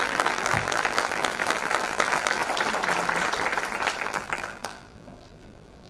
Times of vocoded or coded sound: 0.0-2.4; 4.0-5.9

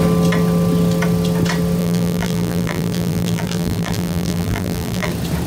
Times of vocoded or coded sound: 1.8-5.1